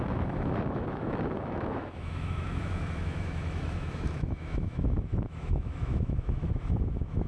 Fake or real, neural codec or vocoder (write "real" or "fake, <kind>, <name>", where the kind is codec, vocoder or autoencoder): fake, autoencoder, DAC-VAE